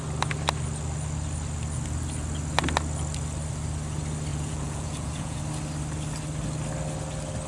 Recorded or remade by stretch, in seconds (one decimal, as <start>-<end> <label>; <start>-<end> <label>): 0.0-4.3 recorded; 4.3-5.4 remade; 5.4-7.5 recorded